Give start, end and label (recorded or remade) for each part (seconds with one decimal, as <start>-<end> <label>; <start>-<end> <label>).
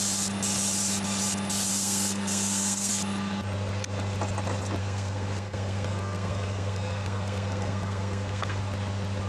0.0-1.7 recorded; 1.7-2.9 remade; 2.9-4.8 recorded; 4.8-8.6 remade; 8.6-9.3 recorded